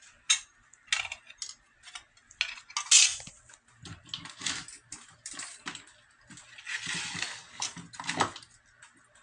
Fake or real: real